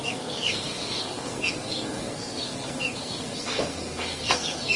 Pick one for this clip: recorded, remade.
remade